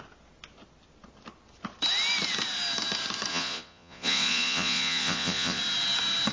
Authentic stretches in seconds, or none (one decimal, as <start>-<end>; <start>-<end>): 0.0-3.3; 5.6-6.3